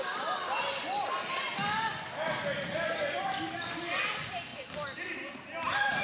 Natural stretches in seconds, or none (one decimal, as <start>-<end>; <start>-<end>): 0.0-6.0